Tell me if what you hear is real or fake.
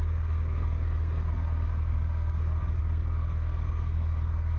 fake